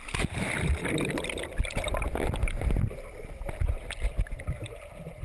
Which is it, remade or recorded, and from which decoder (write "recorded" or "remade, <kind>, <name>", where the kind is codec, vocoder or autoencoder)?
recorded